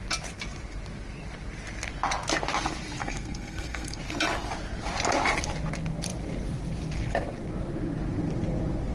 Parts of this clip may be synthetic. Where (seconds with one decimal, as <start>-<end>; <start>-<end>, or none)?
3.0-4.0